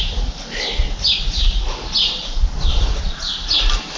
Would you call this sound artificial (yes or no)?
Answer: no